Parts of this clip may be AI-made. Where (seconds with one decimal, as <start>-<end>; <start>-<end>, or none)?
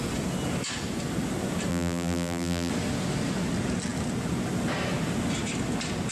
1.7-2.7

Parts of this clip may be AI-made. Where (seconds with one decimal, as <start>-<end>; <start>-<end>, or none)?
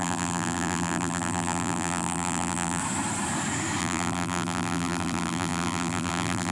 0.0-2.8; 3.8-6.5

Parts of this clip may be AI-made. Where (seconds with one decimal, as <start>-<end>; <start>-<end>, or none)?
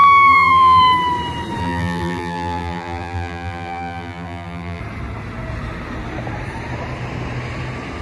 0.0-0.8; 1.6-4.8